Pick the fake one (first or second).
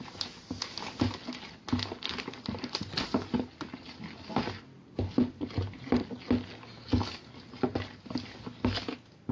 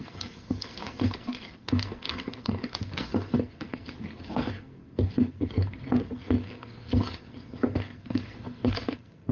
second